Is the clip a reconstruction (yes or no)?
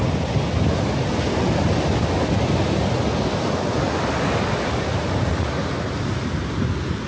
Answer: no